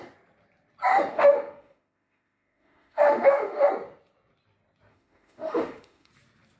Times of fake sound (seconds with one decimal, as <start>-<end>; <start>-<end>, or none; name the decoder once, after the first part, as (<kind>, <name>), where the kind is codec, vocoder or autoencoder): 0.9-3.7 (autoencoder, DAC-VAE); 4.9-6.1